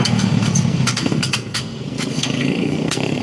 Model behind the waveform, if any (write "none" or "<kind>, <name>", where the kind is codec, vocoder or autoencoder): codec, SNAC